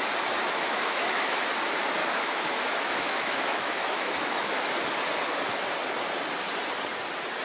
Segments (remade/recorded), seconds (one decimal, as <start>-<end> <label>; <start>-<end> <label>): 0.0-0.4 recorded; 0.4-1.4 remade; 1.4-2.0 recorded; 2.0-4.7 remade; 4.7-7.4 recorded